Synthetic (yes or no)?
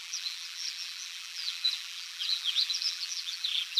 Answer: yes